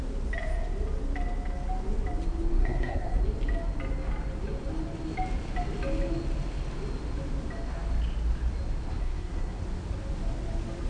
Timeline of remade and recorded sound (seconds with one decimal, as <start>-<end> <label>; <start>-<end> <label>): 0.0-2.6 recorded; 2.6-3.2 remade; 3.2-9.0 recorded; 9.0-9.6 remade; 9.6-10.9 recorded